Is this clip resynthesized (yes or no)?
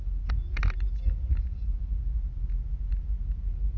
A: no